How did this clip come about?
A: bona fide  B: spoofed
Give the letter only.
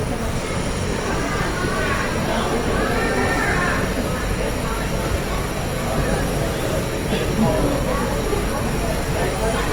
A